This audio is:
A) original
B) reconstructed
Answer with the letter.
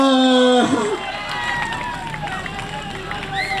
A